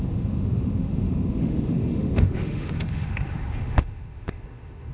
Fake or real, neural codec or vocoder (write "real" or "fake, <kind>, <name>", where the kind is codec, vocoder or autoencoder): fake, autoencoder, DAC-VAE